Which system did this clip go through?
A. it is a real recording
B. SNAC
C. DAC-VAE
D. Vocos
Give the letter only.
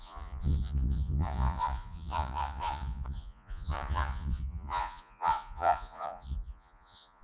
D